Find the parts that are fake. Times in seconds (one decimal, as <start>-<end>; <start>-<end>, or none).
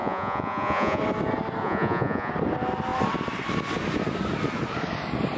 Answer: 0.0-1.0; 1.6-2.3